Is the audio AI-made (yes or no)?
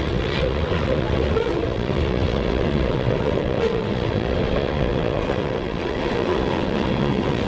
yes